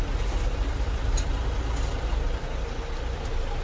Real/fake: real